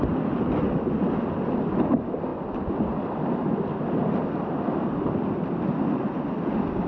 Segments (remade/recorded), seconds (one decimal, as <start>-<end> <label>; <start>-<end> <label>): 0.0-6.9 recorded